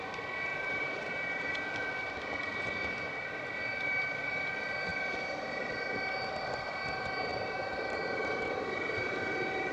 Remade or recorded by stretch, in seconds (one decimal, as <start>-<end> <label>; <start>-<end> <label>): 0.0-0.5 recorded; 0.5-1.5 remade; 1.5-7.3 recorded; 7.3-8.5 remade; 8.5-9.7 recorded